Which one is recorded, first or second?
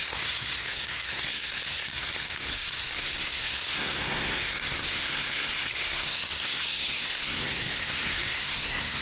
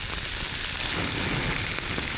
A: second